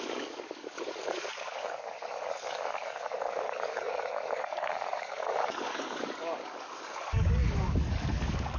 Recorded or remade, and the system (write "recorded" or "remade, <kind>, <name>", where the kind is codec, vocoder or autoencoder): remade, codec, DAC